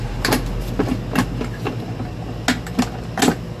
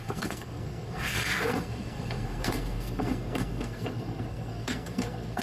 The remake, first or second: second